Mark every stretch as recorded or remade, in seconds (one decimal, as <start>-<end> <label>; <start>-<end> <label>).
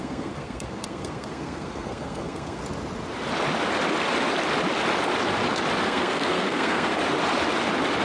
0.0-2.6 remade; 2.6-5.8 recorded; 5.8-6.9 remade; 6.9-8.0 recorded